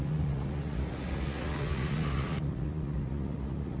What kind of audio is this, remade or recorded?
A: remade